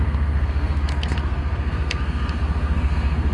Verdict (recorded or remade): remade